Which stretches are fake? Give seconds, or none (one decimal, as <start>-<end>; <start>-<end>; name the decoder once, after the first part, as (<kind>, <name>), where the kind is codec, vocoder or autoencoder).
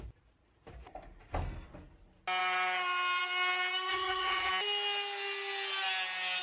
3.9-4.5 (vocoder, HiFi-GAN)